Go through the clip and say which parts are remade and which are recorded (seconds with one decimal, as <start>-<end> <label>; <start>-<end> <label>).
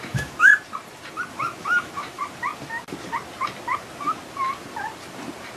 0.0-0.5 remade; 0.5-1.3 recorded; 1.3-2.2 remade; 2.2-5.6 recorded